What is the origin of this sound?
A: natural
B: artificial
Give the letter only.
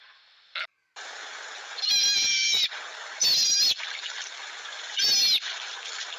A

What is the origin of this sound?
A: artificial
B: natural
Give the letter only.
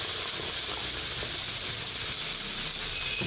B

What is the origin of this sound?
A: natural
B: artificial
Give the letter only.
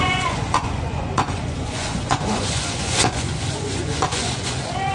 B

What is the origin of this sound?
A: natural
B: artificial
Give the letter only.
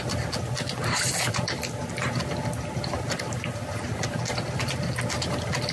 A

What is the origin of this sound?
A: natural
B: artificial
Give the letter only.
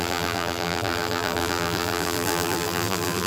B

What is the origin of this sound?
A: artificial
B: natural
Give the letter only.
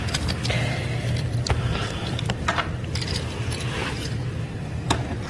A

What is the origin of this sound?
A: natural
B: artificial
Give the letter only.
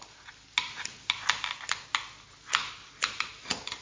A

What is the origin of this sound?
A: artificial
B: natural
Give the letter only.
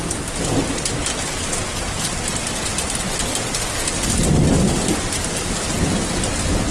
B